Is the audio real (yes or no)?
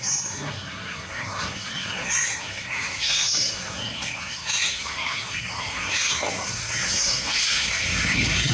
no